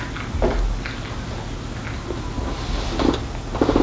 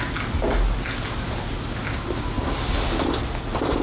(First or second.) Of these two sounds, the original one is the first